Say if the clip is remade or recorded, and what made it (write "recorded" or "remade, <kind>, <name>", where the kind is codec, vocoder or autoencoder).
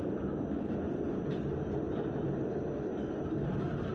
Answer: recorded